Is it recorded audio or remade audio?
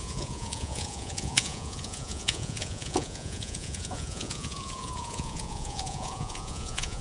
remade